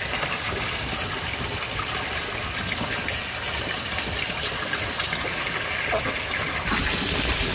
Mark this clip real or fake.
real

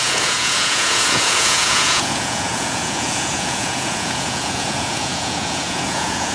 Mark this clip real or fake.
fake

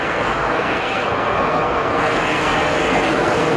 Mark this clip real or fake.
fake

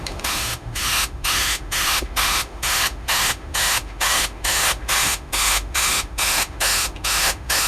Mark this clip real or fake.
fake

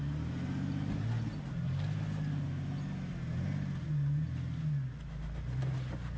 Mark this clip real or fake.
real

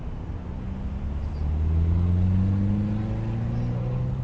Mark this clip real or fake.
real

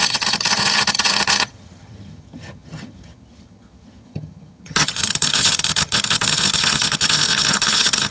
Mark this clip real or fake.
fake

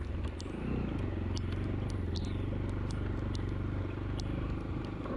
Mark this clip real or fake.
real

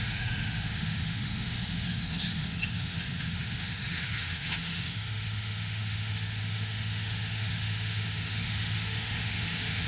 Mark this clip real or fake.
fake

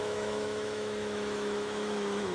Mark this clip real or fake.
fake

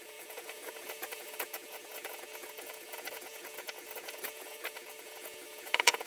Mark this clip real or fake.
fake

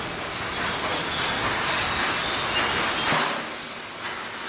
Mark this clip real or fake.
real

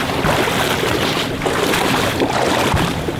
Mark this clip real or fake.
real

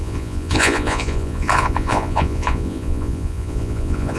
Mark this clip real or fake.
fake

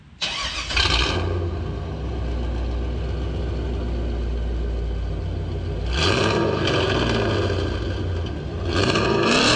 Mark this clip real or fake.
real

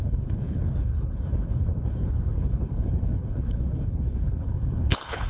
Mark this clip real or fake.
fake